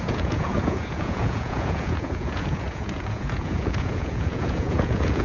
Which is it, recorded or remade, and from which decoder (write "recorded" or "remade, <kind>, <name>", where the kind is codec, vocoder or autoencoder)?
remade, vocoder, Vocos